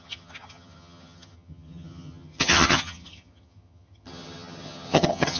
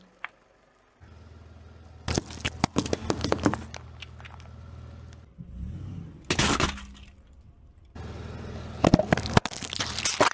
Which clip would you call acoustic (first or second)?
second